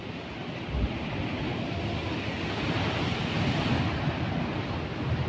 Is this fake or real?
real